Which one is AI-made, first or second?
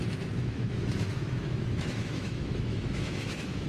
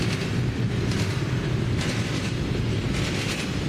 first